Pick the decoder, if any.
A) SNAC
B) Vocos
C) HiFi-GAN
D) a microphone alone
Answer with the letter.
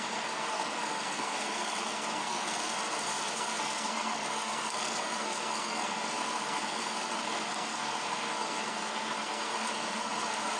A